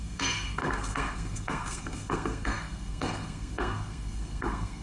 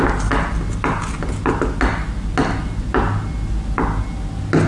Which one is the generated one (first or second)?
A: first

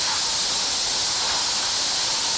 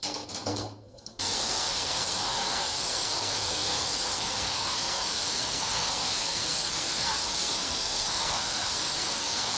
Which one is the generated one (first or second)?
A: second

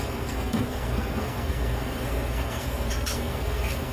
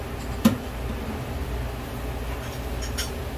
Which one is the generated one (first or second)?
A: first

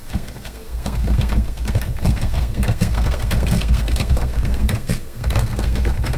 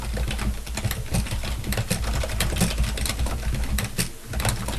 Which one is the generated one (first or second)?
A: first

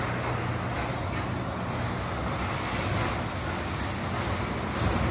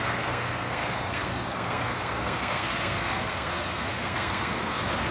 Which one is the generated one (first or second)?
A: second